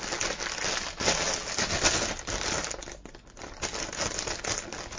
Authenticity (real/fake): real